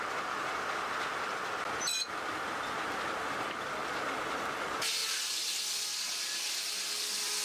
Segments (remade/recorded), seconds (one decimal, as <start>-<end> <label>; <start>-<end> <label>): 0.0-7.4 recorded